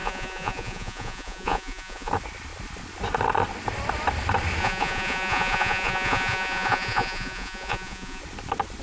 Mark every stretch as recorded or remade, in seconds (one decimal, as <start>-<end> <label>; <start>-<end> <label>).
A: 0.0-2.1 remade; 2.1-4.6 recorded; 4.6-8.2 remade; 8.2-8.8 recorded